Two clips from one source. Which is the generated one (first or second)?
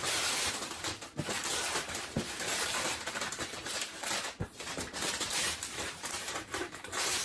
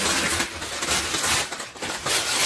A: first